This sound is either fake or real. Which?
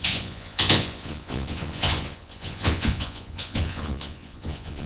fake